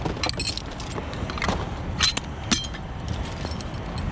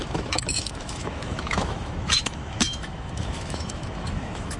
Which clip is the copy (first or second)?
second